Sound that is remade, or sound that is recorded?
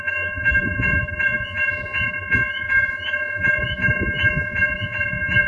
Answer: remade